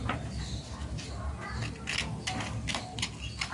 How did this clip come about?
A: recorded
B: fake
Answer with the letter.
A